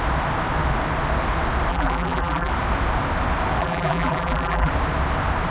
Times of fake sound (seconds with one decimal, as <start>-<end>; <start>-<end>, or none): 1.7-2.5; 3.6-4.7